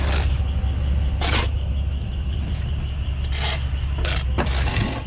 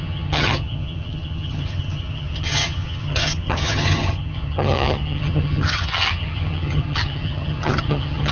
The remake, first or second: second